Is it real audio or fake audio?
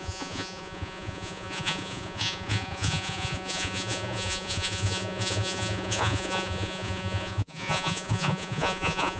fake